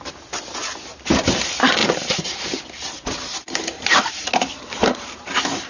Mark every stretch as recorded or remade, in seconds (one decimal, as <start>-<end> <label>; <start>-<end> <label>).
0.0-1.8 recorded; 1.8-2.6 remade; 2.6-3.4 recorded; 3.4-4.3 remade; 4.3-4.8 recorded; 4.8-5.7 remade